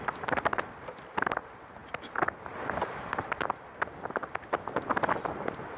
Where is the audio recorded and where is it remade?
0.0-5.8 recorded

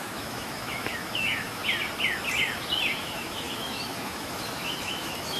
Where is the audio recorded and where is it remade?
0.0-1.6 remade; 1.6-3.0 recorded; 3.0-5.4 remade